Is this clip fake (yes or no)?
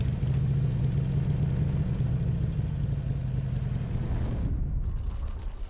no